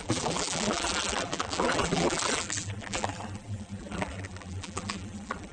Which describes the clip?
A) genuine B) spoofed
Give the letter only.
B